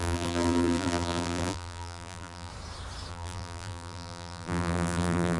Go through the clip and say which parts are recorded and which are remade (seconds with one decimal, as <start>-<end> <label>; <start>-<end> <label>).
0.0-2.5 remade; 2.5-3.1 recorded; 3.1-5.4 remade